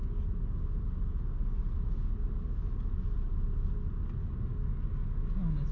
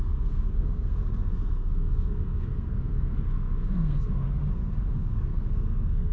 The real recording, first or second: first